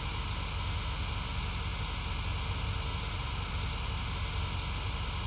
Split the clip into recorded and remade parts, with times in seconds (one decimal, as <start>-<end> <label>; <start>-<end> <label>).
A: 0.0-5.3 recorded